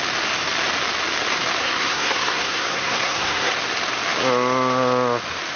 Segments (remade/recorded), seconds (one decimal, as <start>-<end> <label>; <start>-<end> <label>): 0.0-1.6 recorded; 1.6-3.5 remade; 3.5-5.6 recorded